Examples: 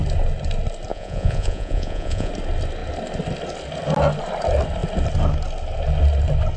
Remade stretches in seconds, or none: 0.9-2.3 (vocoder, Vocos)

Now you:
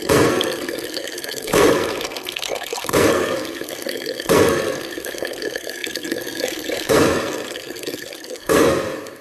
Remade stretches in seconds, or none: 0.0-9.2 (codec, SNAC)

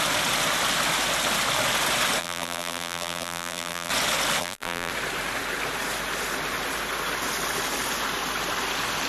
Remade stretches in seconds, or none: 2.2-3.9 (vocoder, BigVGAN v2); 4.4-4.9

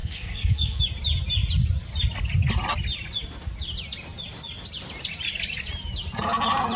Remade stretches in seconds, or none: 0.0-0.8 (codec, SNAC)

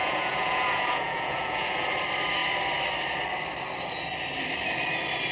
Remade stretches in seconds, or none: 0.0-1.9 (vocoder, Vocos)